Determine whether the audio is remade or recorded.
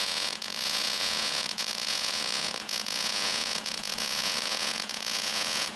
remade